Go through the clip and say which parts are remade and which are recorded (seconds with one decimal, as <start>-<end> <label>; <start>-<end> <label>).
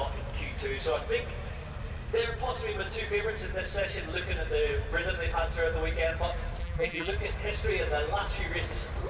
0.0-6.6 recorded; 6.6-7.1 remade; 7.1-9.1 recorded